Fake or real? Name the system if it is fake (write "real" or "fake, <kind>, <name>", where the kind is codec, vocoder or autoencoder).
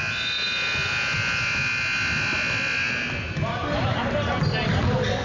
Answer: real